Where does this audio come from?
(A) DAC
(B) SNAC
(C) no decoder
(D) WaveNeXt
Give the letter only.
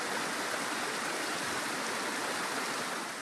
C